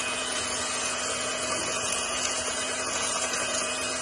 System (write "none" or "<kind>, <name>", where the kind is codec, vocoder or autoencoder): vocoder, Vocos